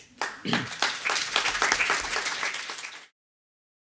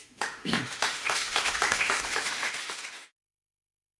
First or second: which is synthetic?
second